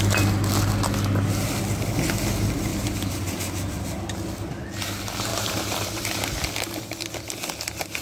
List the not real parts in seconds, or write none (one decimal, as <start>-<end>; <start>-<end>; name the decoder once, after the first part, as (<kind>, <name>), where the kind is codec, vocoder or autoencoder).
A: 5.3-6.5 (vocoder, BigVGAN v2)